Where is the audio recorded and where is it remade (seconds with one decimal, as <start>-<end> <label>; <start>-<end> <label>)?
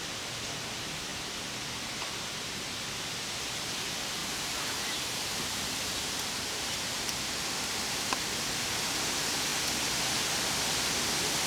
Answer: 0.0-4.2 recorded; 4.2-7.1 remade; 7.1-11.5 recorded